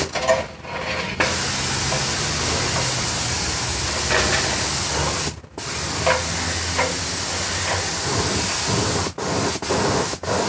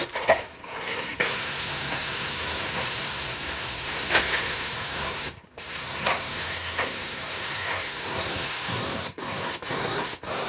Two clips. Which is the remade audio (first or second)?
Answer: second